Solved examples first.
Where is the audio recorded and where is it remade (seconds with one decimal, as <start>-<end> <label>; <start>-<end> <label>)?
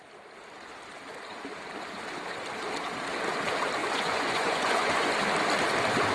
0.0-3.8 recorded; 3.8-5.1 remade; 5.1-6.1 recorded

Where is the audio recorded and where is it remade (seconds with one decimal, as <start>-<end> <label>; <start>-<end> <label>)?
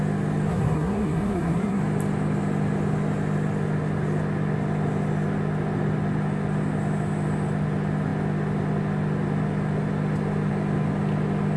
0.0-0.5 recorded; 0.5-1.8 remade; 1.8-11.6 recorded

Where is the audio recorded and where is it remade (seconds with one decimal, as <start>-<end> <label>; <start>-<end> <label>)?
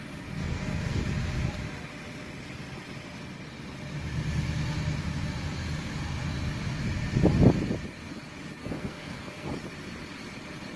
0.0-0.4 recorded; 0.4-1.0 remade; 1.0-8.6 recorded; 8.6-9.5 remade; 9.5-10.8 recorded